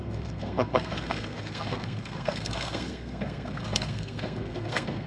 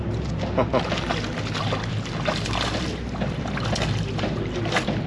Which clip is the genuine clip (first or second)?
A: second